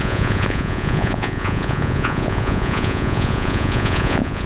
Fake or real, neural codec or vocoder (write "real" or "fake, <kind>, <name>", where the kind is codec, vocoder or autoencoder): fake, vocoder, Vocos